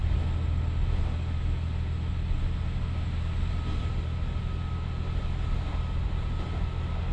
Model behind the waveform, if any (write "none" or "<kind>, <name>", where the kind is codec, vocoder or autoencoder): none